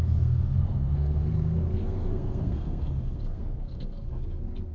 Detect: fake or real fake